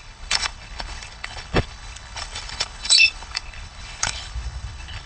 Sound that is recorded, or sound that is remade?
remade